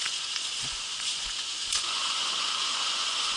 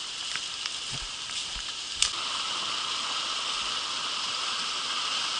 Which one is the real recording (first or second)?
second